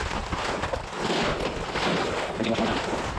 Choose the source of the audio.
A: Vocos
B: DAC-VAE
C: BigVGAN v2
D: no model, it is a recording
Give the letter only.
D